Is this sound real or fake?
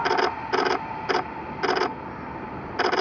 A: real